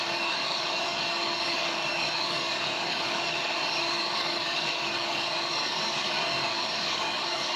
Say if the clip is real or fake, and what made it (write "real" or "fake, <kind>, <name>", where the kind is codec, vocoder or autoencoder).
fake, codec, DAC